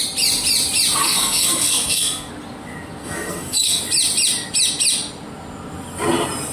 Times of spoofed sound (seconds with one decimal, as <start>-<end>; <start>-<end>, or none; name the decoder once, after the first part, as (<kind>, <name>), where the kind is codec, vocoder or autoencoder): 1.0-2.3 (codec, SNAC); 3.0-3.8